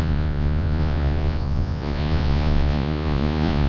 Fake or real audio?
fake